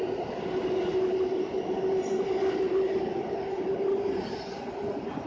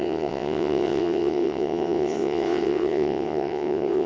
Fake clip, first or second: second